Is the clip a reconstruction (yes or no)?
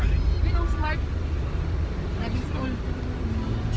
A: no